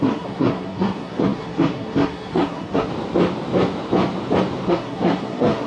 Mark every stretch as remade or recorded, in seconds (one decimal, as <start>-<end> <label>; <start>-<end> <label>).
0.0-2.9 remade; 2.9-4.7 recorded; 4.7-5.7 remade